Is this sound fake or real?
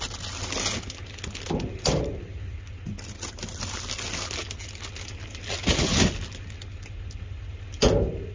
real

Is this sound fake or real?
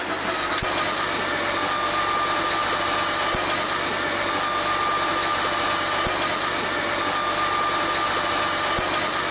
real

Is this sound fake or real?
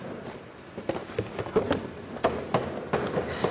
real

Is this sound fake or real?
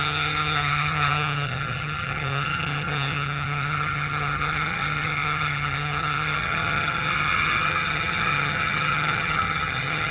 fake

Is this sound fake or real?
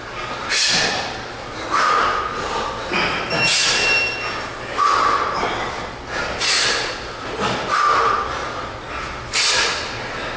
real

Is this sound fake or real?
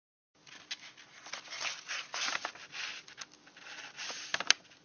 real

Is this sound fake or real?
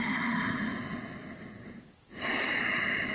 real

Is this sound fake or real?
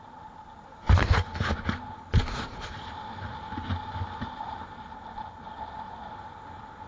real